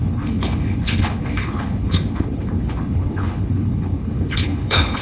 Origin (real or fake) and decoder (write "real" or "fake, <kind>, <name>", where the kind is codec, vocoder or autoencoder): fake, codec, HILCodec